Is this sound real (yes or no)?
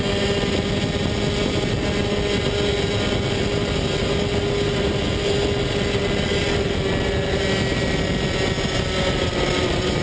yes